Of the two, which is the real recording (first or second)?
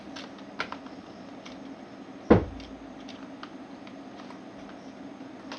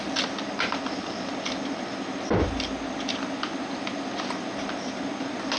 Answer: first